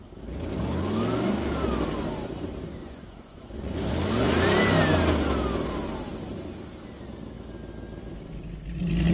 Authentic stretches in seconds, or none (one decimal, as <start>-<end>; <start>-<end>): 0.0-2.8; 3.8-9.1